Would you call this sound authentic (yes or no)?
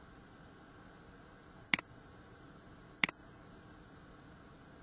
yes